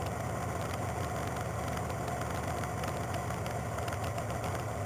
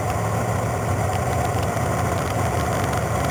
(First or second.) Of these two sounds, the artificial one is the second